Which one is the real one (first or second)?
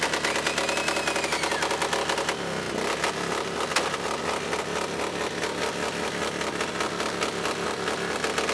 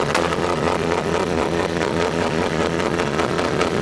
first